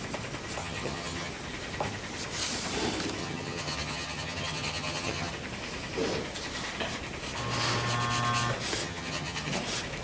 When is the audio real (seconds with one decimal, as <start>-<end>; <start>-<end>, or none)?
0.0-0.6; 1.3-3.2; 5.3-8.8; 9.5-10.0